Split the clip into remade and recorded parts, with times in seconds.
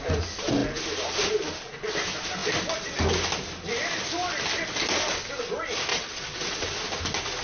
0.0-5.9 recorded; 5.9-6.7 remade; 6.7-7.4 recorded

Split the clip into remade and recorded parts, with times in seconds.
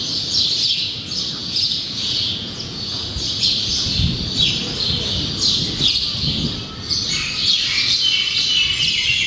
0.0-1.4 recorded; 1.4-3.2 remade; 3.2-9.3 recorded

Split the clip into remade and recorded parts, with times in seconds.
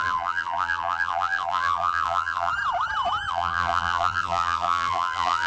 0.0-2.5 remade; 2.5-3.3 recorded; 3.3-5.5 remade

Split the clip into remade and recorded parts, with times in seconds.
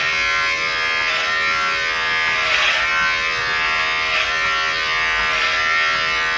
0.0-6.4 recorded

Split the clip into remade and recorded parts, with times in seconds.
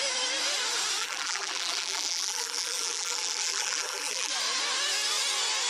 0.0-1.0 recorded; 1.0-4.3 remade; 4.3-5.7 recorded